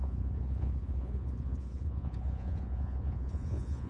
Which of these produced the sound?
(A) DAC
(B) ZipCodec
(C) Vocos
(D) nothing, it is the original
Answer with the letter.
C